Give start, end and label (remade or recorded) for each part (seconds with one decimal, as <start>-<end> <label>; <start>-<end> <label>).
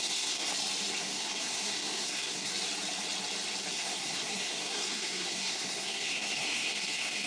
0.0-0.5 remade; 0.5-1.0 recorded; 1.0-2.5 remade; 2.5-3.7 recorded; 3.7-7.3 remade